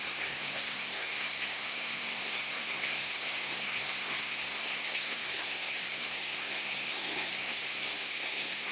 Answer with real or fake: fake